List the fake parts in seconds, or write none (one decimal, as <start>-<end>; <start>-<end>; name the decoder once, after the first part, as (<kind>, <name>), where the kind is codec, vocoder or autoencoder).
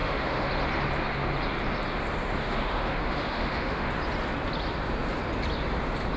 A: 0.0-0.5 (autoencoder, DAC-VAE); 2.4-3.9